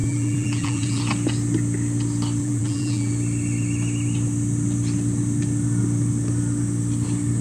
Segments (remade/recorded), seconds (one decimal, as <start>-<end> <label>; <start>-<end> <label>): 0.0-1.0 remade; 1.0-2.4 recorded; 2.4-3.1 remade; 3.1-7.4 recorded